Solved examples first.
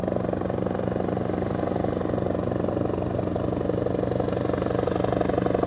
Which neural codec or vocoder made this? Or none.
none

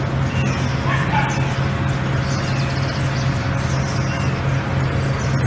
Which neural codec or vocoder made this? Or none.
none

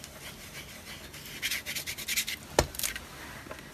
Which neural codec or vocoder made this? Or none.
none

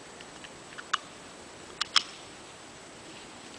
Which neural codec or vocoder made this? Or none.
none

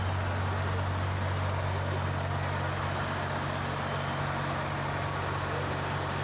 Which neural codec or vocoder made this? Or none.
none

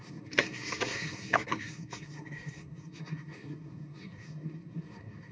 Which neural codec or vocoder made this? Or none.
codec, SNAC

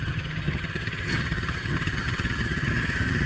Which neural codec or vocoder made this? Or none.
vocoder, HiFi-GAN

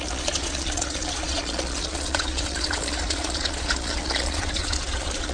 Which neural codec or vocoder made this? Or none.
vocoder, Vocos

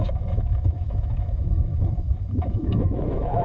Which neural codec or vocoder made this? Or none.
autoencoder, DAC-VAE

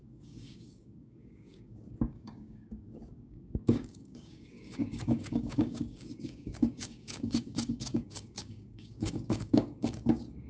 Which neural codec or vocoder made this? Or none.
codec, DAC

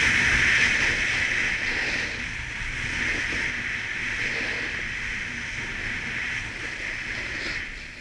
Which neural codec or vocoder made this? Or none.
none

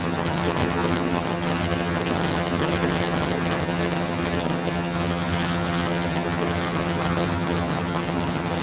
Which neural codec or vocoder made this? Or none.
vocoder, HiFi-GAN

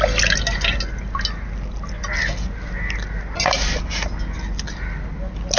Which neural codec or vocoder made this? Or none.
none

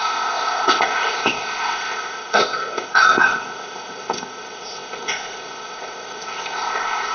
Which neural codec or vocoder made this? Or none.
codec, ZipCodec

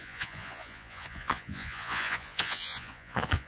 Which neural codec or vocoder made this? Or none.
vocoder, Vocos